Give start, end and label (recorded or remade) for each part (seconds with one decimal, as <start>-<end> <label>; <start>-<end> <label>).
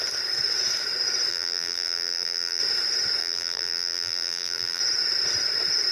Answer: 0.0-1.3 recorded; 1.3-2.6 remade; 2.6-3.2 recorded; 3.2-4.8 remade; 4.8-5.9 recorded